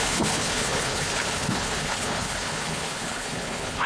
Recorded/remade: remade